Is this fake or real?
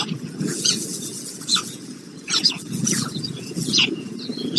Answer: fake